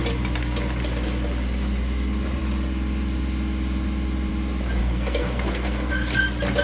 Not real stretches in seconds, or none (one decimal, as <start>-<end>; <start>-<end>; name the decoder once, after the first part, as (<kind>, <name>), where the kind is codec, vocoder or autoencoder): 4.8-5.9 (codec, SNAC)